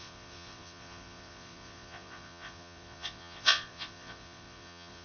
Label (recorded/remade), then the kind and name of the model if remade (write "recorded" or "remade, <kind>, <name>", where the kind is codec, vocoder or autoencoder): remade, vocoder, Vocos